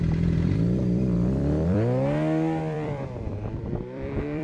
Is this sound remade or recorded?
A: remade